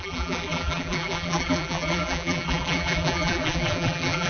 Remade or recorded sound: remade